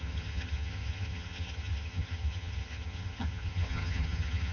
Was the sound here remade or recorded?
remade